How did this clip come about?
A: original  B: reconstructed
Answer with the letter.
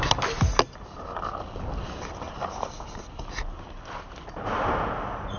A